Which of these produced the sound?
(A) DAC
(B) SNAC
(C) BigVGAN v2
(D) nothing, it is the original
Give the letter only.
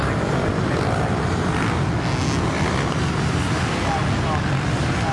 D